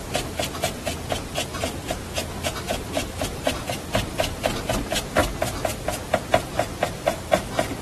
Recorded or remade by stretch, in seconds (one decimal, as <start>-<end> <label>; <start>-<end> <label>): 0.0-2.2 recorded; 2.2-4.7 remade; 4.7-7.8 recorded